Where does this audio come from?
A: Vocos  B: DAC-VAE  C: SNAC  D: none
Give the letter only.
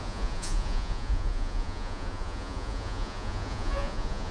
A